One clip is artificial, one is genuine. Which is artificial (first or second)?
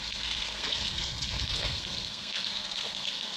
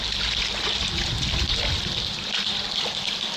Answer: first